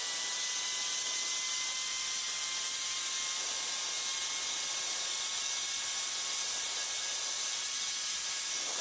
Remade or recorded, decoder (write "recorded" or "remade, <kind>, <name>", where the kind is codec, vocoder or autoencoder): recorded